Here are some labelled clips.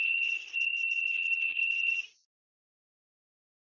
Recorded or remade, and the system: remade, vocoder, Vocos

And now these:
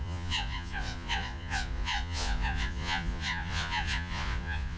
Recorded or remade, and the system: remade, vocoder, Vocos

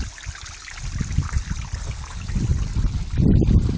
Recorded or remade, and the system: recorded